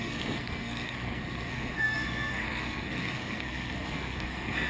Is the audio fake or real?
fake